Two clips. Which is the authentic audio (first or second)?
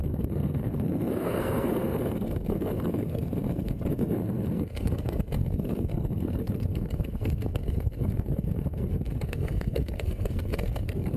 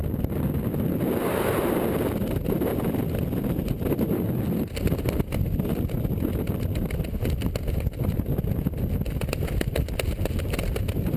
second